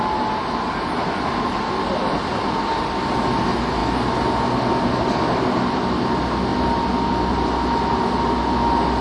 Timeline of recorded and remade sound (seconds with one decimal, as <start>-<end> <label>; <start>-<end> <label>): 0.0-9.0 recorded